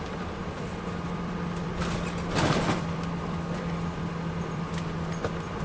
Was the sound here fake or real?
fake